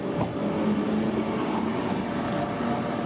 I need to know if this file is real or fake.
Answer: real